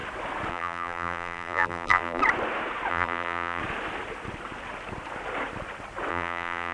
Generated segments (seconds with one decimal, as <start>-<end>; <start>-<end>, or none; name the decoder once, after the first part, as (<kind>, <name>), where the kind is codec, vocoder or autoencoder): 0.5-2.2 (vocoder, BigVGAN v2); 2.9-3.6; 6.1-6.7